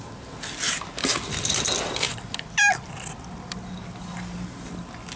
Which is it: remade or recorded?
recorded